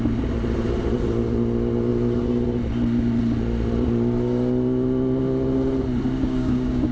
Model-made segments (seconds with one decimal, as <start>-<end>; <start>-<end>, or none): 6.2-6.9